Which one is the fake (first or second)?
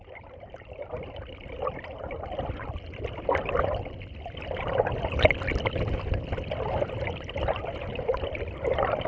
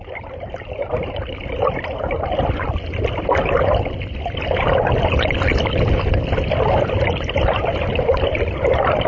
first